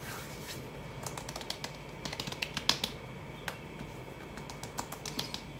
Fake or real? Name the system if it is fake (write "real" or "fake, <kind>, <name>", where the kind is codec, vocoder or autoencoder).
real